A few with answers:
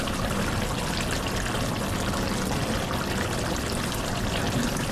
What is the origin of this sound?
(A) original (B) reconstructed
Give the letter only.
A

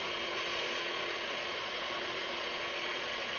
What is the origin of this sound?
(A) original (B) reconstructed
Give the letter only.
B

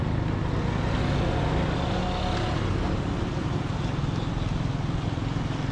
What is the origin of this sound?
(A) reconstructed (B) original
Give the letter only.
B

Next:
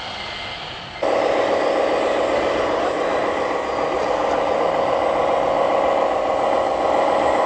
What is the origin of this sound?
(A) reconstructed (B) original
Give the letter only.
B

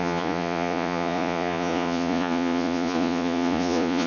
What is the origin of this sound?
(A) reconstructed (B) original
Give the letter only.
A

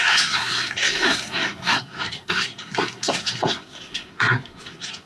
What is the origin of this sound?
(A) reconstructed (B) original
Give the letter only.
A